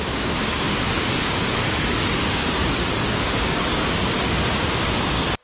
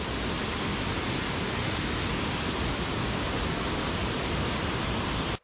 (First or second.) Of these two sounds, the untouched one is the second